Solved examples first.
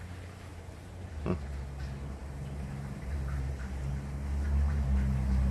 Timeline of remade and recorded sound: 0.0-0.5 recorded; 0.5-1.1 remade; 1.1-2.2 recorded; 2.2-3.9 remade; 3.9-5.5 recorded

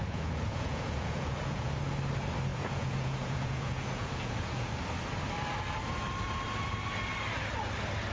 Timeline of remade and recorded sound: 0.0-1.7 remade; 1.7-2.5 recorded; 2.5-4.7 remade; 4.7-8.1 recorded